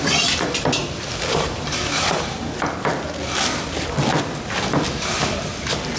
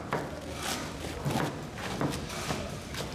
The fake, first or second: first